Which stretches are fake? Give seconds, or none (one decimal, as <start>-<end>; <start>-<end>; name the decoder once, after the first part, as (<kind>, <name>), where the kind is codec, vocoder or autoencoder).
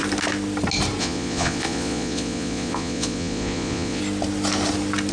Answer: 1.0-4.0 (vocoder, Vocos)